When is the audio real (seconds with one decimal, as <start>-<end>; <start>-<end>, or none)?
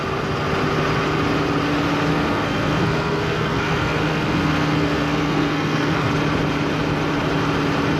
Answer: 0.0-2.1; 6.1-8.0